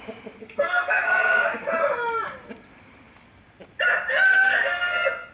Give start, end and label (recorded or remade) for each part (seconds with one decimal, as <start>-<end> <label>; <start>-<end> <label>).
0.0-0.4 recorded; 0.4-1.6 remade; 1.6-4.3 recorded; 4.3-5.3 remade